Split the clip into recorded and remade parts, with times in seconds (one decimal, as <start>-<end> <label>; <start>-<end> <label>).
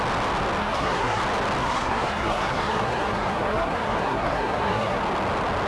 0.0-0.6 recorded; 0.6-1.2 remade; 1.2-1.6 recorded; 1.6-5.0 remade; 5.0-5.7 recorded